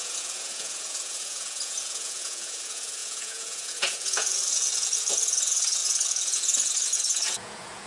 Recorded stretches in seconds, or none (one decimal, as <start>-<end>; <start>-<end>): none